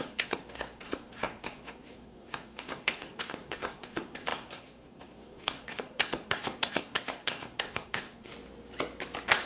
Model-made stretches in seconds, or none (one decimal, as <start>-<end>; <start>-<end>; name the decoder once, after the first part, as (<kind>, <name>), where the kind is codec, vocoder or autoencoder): 0.0-8.3 (codec, SNAC)